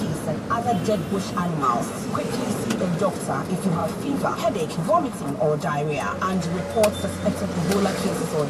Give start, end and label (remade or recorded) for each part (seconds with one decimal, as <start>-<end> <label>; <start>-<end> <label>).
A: 0.0-3.8 recorded; 3.8-4.7 remade; 4.7-8.5 recorded